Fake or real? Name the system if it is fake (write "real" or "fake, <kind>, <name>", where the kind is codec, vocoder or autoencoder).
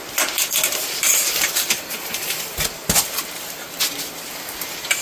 real